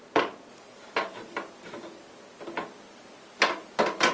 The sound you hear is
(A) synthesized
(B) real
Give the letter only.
B